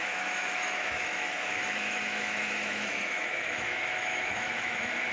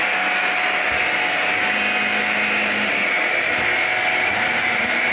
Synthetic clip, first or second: first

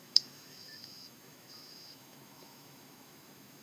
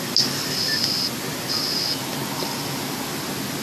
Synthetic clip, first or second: first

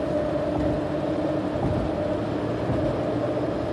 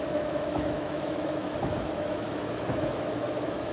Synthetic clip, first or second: second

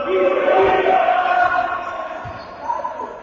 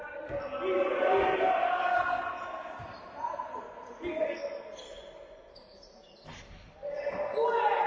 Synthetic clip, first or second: first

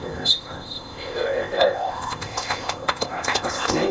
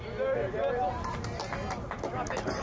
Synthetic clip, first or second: first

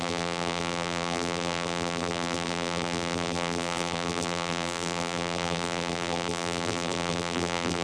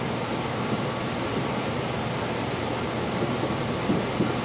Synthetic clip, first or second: first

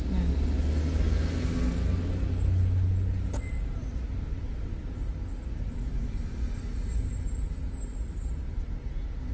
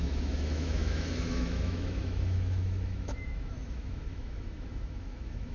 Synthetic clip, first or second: second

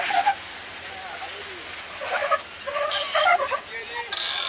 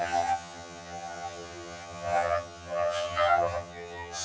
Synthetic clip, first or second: second